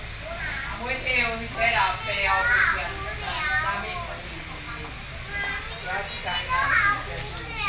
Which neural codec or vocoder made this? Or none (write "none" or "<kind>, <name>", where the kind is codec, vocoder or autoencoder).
none